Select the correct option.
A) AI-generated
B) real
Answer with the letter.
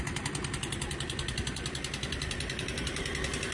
B